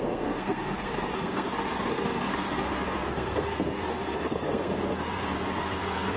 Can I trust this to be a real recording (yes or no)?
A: no